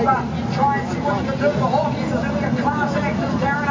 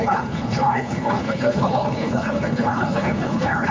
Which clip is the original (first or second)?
first